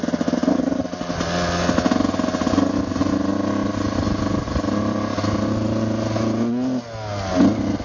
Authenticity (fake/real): real